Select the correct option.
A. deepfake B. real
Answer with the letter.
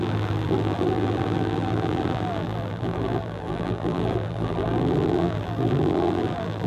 A